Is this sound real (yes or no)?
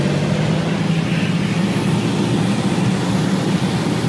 yes